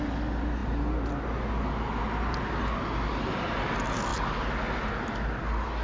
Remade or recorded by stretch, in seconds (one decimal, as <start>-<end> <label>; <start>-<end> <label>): 0.0-5.8 recorded